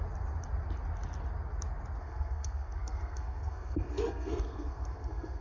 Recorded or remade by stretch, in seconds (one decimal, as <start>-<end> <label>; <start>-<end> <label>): 0.0-2.0 recorded; 2.0-5.4 remade

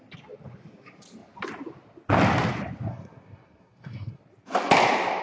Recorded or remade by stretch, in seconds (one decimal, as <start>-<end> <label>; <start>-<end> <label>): 0.0-2.9 recorded; 2.9-4.2 remade; 4.2-5.2 recorded

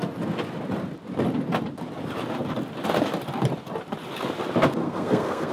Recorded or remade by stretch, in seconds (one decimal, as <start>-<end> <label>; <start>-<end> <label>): 0.0-4.8 recorded; 4.8-5.5 remade

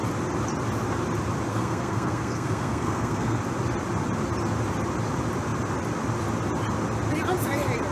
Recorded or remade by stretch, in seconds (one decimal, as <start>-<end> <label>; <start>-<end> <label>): 0.0-1.5 recorded; 1.5-3.4 remade; 3.4-7.9 recorded

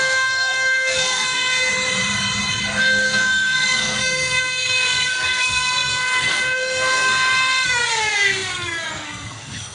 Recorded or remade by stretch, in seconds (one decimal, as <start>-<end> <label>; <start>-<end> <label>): 0.0-1.7 remade; 1.7-2.8 recorded; 2.8-9.7 remade

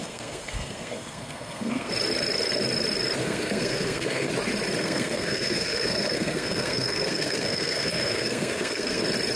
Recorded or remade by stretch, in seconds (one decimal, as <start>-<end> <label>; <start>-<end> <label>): 0.0-1.9 remade; 1.9-3.2 recorded; 3.2-4.3 remade; 4.3-4.8 recorded; 4.8-9.0 remade; 9.0-9.4 recorded